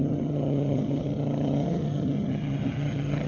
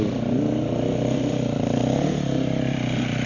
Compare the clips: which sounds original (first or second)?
second